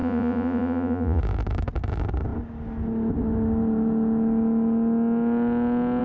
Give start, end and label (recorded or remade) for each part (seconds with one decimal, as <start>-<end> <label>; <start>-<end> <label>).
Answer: 0.0-1.2 remade; 1.2-6.0 recorded